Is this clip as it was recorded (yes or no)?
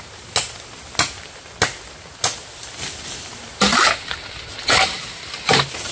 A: yes